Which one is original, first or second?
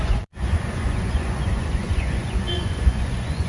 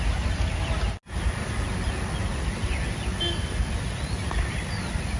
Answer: second